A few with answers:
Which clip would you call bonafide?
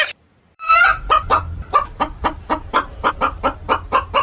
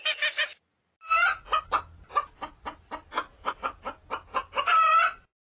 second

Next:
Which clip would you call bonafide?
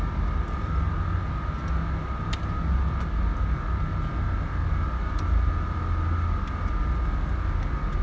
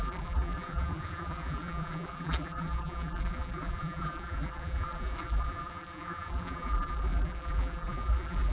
first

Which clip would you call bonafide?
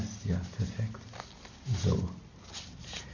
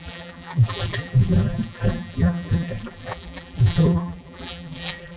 first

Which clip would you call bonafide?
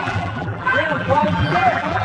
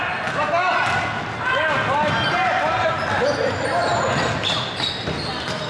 second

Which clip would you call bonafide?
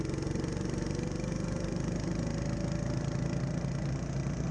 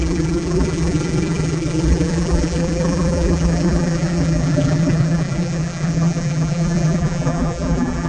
first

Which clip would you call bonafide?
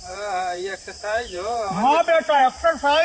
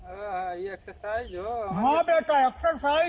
second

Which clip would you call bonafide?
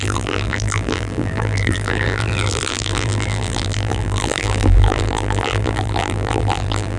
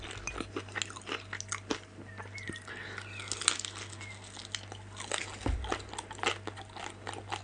second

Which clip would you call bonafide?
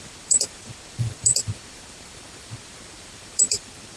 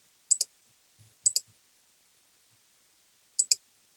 second